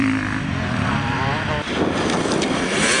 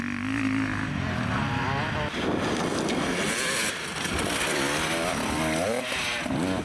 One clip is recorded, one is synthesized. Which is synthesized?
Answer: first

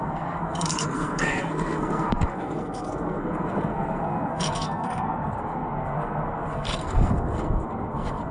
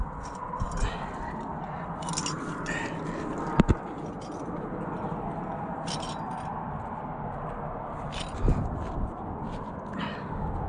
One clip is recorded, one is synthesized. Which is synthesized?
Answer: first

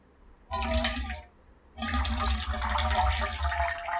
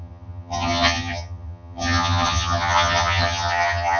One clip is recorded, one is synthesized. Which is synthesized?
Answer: second